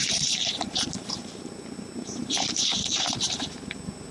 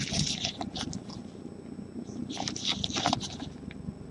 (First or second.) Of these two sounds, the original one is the second